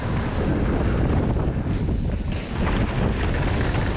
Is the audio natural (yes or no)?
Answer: yes